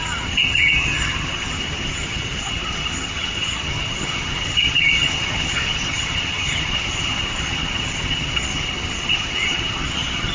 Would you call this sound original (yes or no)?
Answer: no